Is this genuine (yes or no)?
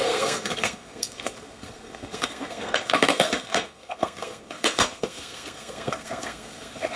no